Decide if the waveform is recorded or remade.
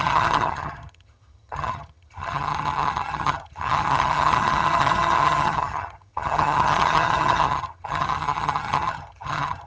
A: remade